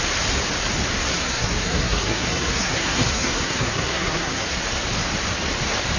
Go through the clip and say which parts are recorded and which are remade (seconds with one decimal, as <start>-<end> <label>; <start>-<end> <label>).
0.0-1.1 recorded; 1.1-4.6 remade; 4.6-6.0 recorded